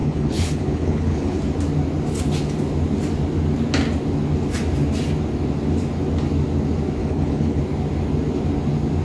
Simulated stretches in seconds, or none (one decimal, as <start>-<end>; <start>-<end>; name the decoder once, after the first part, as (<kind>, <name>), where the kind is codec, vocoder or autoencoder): 0.0-1.4 (codec, HILCodec); 7.0-7.6